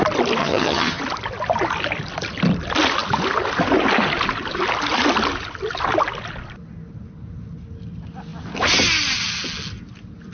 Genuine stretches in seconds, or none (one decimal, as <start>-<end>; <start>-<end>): 0.0-0.4; 1.0-10.3